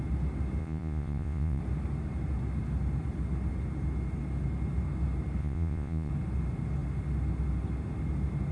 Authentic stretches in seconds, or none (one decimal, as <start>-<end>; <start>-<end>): 0.0-0.6; 1.6-5.4; 6.1-8.5